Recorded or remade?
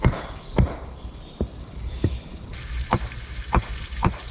remade